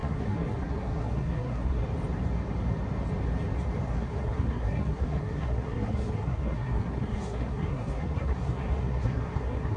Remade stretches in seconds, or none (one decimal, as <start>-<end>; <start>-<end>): 0.0-1.8; 3.9-9.8

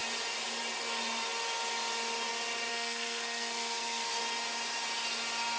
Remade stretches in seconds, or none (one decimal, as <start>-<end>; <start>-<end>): 2.7-4.2

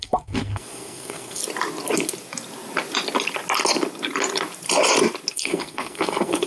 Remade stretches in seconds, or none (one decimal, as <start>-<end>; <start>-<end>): 0.0-1.4; 5.3-6.5

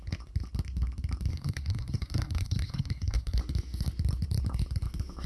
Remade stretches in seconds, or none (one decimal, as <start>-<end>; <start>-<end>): 1.3-3.4

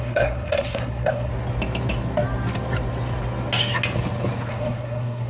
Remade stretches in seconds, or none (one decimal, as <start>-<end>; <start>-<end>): 0.0-1.3; 4.5-5.3

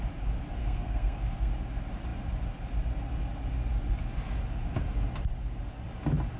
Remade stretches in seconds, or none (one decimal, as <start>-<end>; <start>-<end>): 0.6-1.5